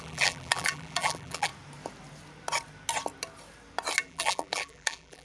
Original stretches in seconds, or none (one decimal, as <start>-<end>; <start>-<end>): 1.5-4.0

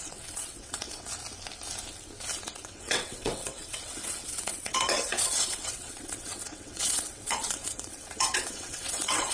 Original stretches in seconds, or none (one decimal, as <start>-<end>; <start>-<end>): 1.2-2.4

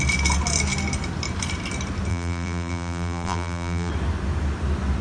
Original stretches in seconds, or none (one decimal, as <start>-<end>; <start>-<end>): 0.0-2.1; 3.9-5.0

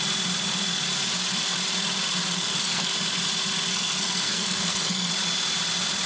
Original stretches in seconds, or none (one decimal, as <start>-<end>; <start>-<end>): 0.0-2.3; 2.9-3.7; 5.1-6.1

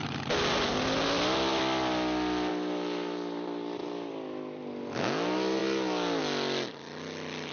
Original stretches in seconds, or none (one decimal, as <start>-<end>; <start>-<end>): 0.0-7.5

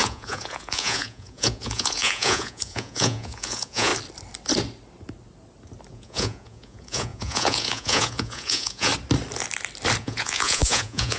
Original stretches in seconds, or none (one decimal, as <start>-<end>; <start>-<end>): 3.9-5.9; 8.9-10.0